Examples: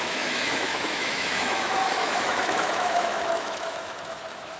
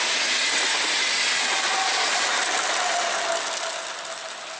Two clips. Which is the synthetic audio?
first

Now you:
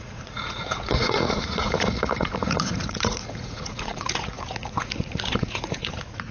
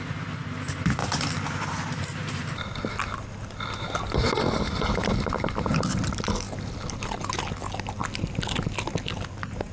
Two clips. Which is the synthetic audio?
first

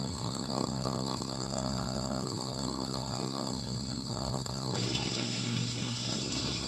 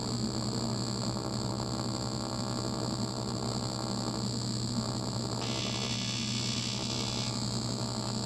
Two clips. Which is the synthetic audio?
first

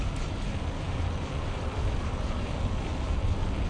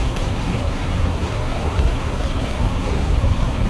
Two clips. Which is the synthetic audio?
second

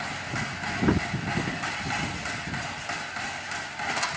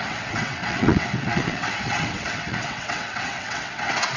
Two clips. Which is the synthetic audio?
second